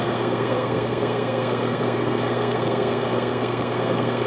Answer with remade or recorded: remade